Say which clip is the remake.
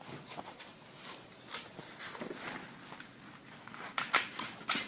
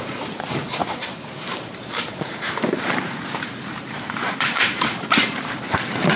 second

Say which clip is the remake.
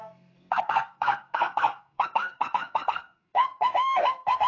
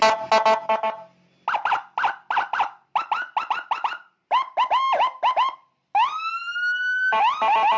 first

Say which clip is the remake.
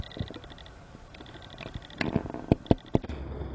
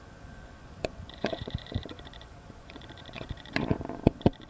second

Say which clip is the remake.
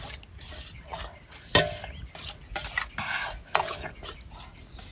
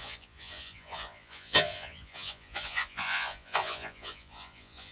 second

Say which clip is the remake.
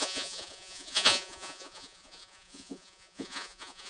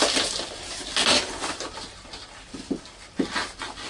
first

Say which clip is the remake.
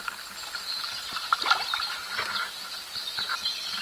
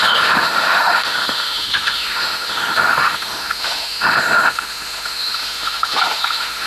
second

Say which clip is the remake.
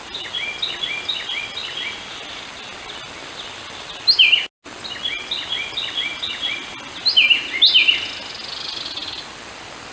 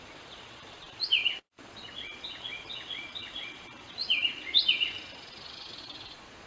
second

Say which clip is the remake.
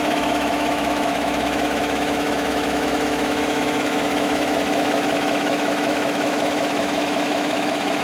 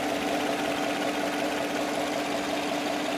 first